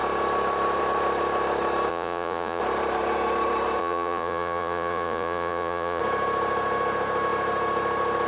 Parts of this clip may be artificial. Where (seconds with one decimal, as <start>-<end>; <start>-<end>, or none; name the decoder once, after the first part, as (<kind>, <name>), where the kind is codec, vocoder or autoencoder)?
1.9-2.6 (vocoder, Vocos); 3.8-6.0